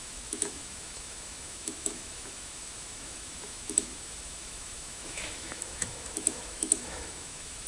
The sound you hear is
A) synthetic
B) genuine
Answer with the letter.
A